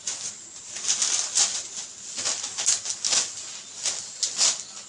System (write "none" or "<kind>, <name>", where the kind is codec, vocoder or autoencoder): none